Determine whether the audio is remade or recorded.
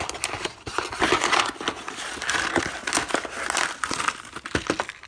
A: recorded